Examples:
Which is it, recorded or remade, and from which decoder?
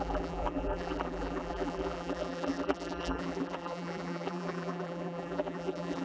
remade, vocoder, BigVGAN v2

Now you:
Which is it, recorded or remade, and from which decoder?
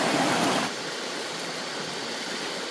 recorded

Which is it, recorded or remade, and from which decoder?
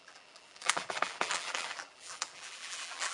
remade, vocoder, BigVGAN v2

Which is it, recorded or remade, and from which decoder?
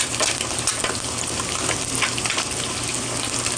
recorded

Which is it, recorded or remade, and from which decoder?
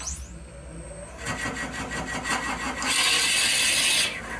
recorded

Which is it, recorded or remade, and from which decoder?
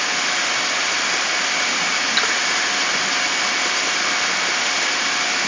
recorded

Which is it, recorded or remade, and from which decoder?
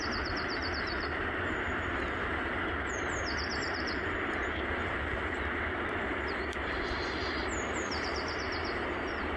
remade, vocoder, BigVGAN v2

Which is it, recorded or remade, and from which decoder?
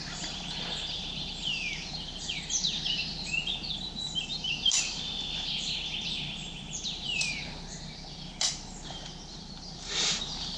remade, vocoder, BigVGAN v2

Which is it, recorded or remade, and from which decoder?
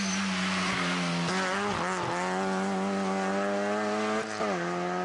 recorded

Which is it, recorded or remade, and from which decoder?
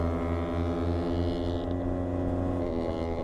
recorded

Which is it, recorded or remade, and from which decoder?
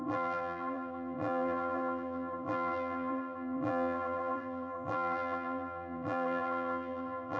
remade, vocoder, BigVGAN v2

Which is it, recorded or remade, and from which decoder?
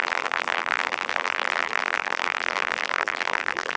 remade, vocoder, BigVGAN v2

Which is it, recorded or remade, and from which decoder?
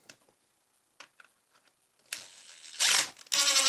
recorded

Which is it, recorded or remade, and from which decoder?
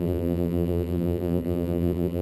remade, vocoder, BigVGAN v2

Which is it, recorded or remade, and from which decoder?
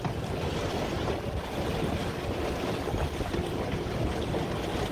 recorded